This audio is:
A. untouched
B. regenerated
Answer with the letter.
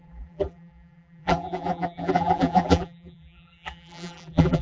B